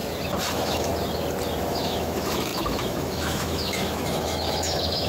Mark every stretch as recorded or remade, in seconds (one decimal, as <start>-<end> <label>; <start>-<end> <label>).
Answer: 0.0-0.5 recorded; 0.5-0.9 remade; 0.9-1.7 recorded; 1.7-5.1 remade